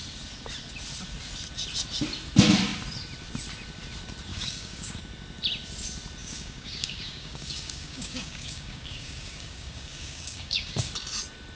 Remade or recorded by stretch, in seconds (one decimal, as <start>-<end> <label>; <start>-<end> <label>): 0.0-4.3 recorded; 4.3-5.0 remade; 5.0-6.2 recorded; 6.2-10.9 remade; 10.9-11.6 recorded